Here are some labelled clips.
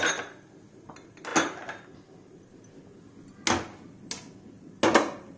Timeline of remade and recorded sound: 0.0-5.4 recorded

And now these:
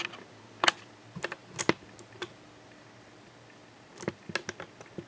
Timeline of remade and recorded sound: 0.0-5.1 recorded

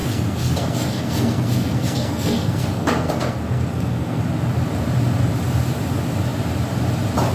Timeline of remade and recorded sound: 0.0-4.2 remade; 4.2-7.3 recorded

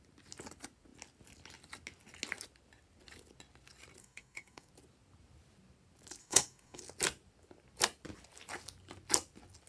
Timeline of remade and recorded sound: 0.0-4.0 recorded; 4.0-4.7 remade; 4.7-6.2 recorded; 6.2-6.8 remade; 6.8-9.7 recorded